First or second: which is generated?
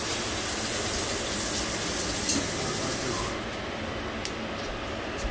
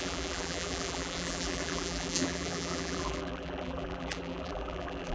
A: second